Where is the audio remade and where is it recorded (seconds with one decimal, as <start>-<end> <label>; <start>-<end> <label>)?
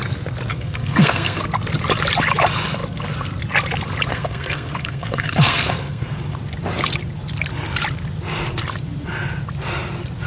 0.0-0.5 recorded; 0.5-1.4 remade; 1.4-4.1 recorded; 4.1-6.1 remade; 6.1-10.3 recorded